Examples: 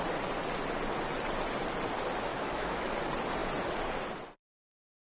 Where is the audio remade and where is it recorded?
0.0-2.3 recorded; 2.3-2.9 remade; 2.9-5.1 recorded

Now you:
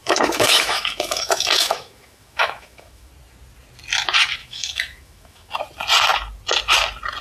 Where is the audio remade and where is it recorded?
0.0-3.1 remade; 3.1-4.4 recorded; 4.4-5.5 remade; 5.5-7.2 recorded

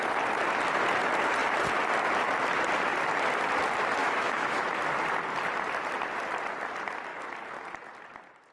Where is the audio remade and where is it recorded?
0.0-4.0 recorded; 4.0-4.6 remade; 4.6-8.5 recorded